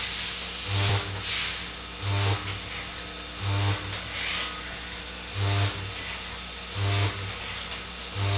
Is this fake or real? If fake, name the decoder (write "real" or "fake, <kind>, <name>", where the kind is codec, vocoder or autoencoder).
real